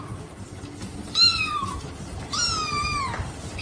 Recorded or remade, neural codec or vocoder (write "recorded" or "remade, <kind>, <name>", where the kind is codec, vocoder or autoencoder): recorded